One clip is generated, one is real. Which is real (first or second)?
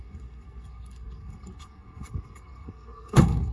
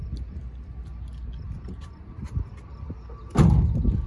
second